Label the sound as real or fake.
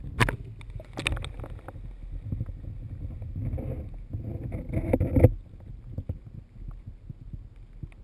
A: real